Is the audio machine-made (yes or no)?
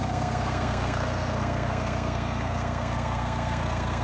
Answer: yes